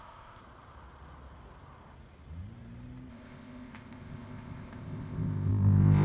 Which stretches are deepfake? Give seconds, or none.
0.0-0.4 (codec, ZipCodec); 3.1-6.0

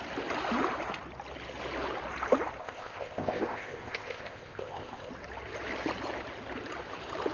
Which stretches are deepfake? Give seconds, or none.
2.6-5.1 (codec, ZipCodec)

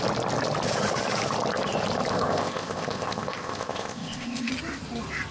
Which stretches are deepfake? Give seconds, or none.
2.1-4.5 (codec, ZipCodec)

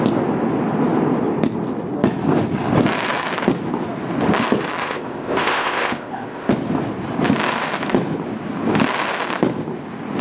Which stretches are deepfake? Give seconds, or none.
4.8-6.5 (codec, ZipCodec)